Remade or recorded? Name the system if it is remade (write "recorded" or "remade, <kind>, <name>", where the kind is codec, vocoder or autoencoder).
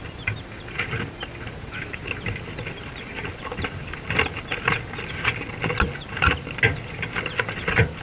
recorded